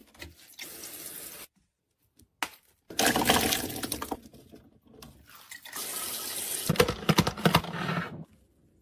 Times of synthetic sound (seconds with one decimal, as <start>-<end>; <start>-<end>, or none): none